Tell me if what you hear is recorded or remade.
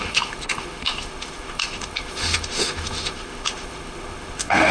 remade